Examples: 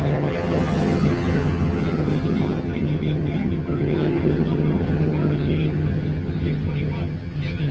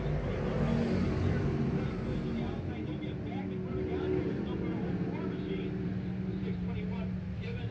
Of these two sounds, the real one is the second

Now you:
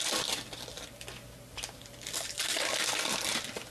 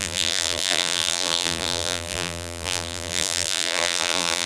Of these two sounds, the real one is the first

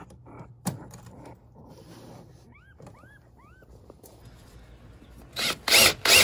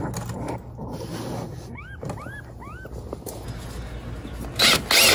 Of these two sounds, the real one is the second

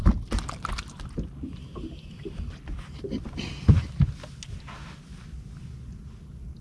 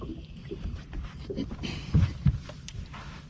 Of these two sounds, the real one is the first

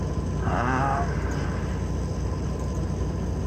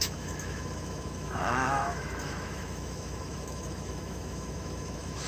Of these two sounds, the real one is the first